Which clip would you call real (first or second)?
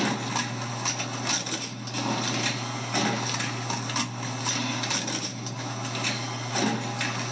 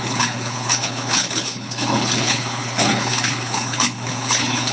first